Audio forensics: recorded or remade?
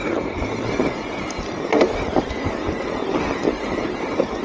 recorded